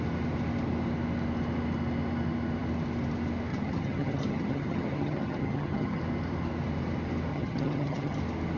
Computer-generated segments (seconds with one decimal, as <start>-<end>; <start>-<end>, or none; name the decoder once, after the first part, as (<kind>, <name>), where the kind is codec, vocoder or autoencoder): 3.5-6.0 (vocoder, HiFi-GAN); 7.3-8.2